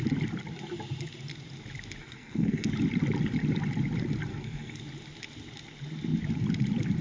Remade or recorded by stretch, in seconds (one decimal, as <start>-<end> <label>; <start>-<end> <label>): 0.0-2.0 recorded; 2.0-2.7 remade; 2.7-4.3 recorded; 4.3-4.8 remade; 4.8-7.0 recorded